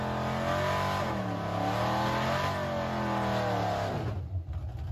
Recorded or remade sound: recorded